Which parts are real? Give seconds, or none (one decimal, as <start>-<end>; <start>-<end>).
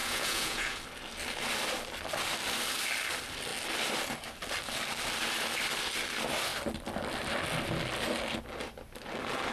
0.8-9.5